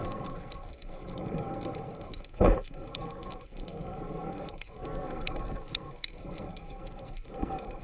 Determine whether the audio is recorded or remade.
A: remade